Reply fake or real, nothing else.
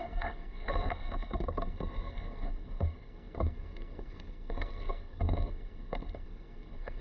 fake